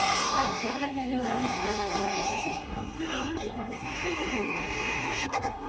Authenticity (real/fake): fake